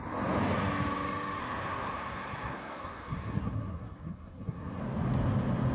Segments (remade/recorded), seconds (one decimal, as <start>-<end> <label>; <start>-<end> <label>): 0.0-1.4 recorded; 1.4-4.8 remade; 4.8-5.7 recorded